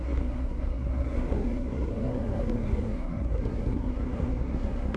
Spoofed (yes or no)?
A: yes